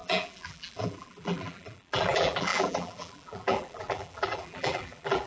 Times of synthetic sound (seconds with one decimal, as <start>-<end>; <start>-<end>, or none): 0.0-5.3